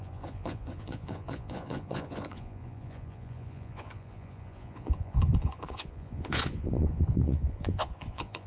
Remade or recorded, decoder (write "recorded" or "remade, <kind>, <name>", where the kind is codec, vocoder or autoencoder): remade, vocoder, Vocos